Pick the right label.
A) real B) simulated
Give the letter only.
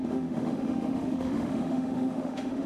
B